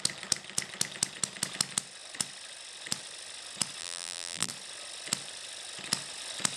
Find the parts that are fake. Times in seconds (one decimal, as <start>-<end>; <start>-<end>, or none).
3.8-4.5